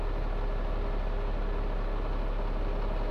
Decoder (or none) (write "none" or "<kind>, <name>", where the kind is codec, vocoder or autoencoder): none